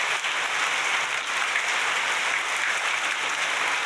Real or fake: real